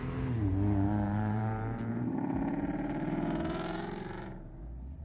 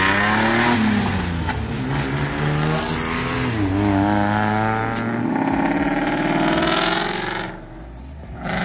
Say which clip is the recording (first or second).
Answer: second